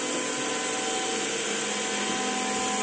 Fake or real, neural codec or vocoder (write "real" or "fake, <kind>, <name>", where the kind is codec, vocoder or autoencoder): real